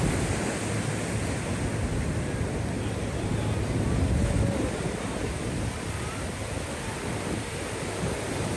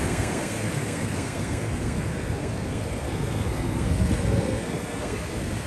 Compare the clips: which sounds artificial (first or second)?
second